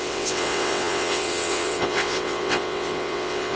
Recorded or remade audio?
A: remade